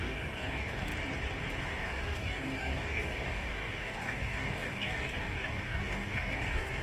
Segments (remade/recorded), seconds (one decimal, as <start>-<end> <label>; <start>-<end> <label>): 0.0-0.9 remade; 0.9-1.6 recorded; 1.6-6.8 remade